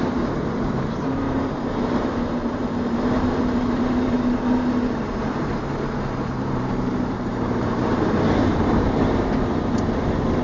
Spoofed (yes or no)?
yes